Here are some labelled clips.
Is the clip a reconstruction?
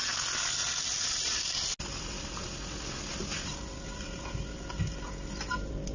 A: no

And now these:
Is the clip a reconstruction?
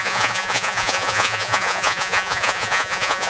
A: yes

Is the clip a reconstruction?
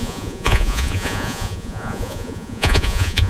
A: yes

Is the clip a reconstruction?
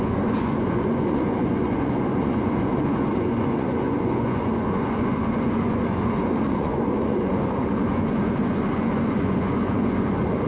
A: yes